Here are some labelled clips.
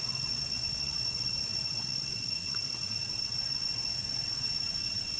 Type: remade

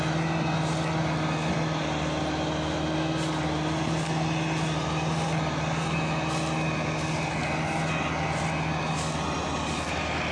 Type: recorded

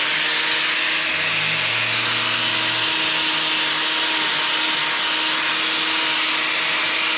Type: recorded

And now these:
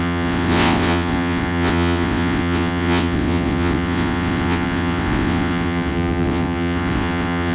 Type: remade